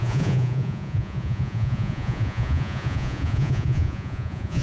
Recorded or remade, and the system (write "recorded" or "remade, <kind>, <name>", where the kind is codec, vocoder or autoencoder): remade, vocoder, Vocos